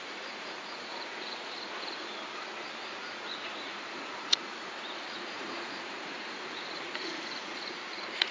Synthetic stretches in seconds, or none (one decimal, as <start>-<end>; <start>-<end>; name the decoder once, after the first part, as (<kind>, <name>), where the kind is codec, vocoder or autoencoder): 0.0-2.2 (vocoder, Vocos); 2.8-8.3

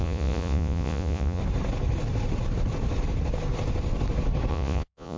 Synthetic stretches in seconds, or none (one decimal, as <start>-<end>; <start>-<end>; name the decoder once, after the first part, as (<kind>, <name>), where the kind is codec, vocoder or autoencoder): 0.0-1.4 (vocoder, Vocos); 4.5-5.2

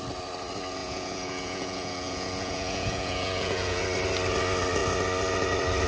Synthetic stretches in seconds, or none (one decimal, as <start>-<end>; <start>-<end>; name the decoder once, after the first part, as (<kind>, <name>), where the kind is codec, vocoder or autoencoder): 0.8-3.8 (vocoder, Vocos)

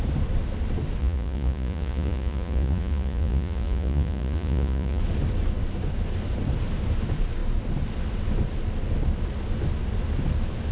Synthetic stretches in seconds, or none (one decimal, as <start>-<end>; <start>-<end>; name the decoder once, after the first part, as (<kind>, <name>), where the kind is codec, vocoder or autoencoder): 1.0-5.0 (vocoder, Vocos)

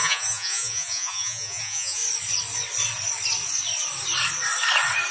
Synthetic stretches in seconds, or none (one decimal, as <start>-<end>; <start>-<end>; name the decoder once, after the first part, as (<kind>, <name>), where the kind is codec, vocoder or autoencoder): 0.0-2.0 (vocoder, Vocos)

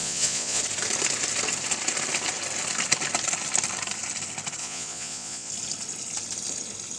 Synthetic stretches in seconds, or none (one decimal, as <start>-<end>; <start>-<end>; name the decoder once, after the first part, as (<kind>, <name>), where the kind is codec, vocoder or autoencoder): 0.0-0.6 (vocoder, Vocos); 4.6-5.5

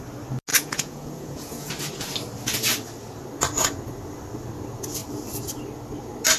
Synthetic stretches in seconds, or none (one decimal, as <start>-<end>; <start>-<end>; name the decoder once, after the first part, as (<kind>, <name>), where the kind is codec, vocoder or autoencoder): 0.5-1.7 (vocoder, Vocos)